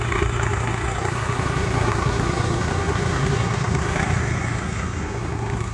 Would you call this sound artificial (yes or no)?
yes